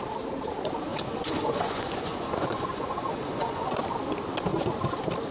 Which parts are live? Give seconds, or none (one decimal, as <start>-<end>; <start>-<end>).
0.0-0.9; 3.7-5.3